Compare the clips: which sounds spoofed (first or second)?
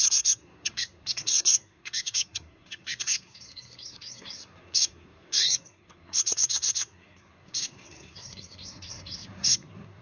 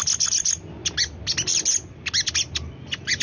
first